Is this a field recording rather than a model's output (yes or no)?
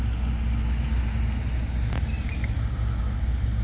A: yes